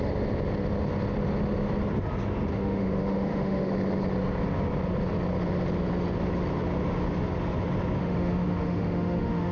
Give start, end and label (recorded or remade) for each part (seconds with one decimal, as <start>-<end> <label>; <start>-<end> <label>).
0.0-2.5 recorded; 2.5-3.7 remade; 3.7-8.0 recorded; 8.0-9.5 remade